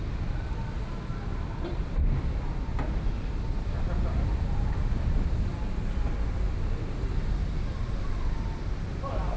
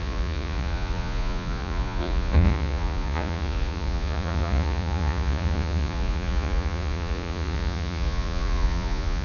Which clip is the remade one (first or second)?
second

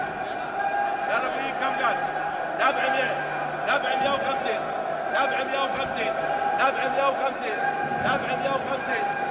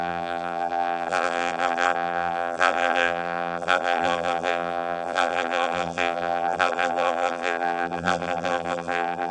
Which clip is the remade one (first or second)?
second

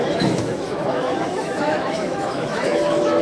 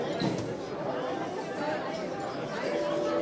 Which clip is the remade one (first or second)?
first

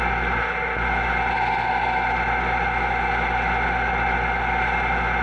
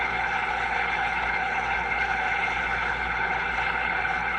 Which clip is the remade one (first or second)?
second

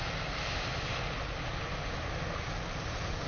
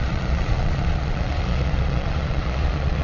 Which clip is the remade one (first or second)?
second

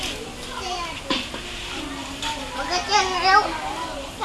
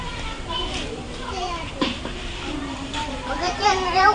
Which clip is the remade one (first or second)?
second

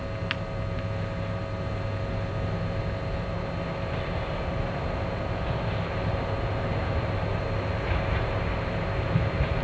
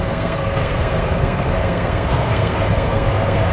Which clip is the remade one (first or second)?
second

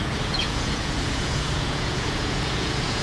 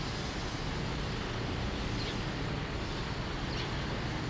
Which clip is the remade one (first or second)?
first